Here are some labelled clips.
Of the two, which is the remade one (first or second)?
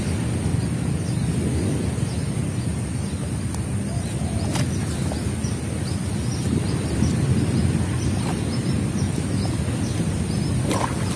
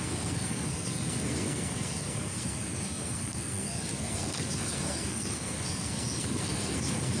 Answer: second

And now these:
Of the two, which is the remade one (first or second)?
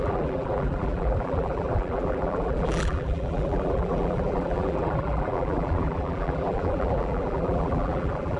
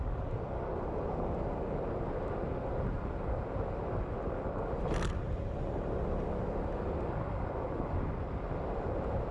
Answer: first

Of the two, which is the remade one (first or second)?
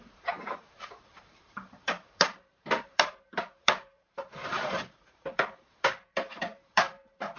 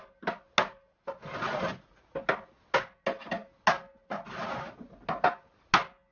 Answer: first